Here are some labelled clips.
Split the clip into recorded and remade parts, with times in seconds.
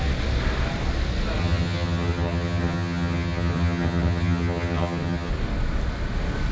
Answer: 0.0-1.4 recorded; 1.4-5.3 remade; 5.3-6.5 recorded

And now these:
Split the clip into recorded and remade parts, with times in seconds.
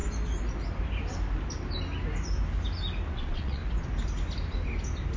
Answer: 0.0-3.1 recorded; 3.1-3.6 remade; 3.6-5.2 recorded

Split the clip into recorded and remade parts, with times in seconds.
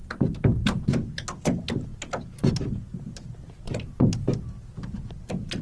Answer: 0.0-5.6 recorded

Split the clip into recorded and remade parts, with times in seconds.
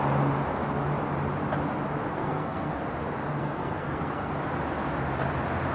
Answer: 0.0-2.1 recorded; 2.1-2.8 remade; 2.8-3.4 recorded; 3.4-4.3 remade; 4.3-5.7 recorded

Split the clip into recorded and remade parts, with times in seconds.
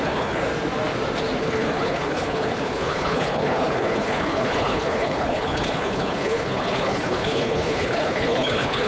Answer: 0.0-0.4 remade; 0.4-1.4 recorded; 1.4-8.9 remade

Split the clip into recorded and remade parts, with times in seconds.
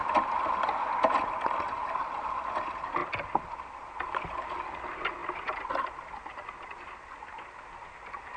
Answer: 0.0-5.2 recorded; 5.2-6.5 remade; 6.5-8.4 recorded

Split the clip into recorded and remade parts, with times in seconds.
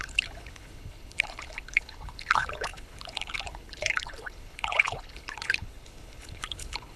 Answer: 0.0-7.0 remade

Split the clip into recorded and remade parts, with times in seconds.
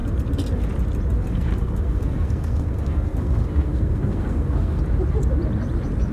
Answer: 0.0-1.3 recorded; 1.3-4.8 remade; 4.8-6.1 recorded